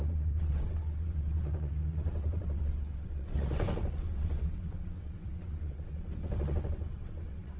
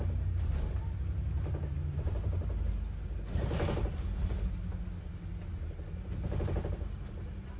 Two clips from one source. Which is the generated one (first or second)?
first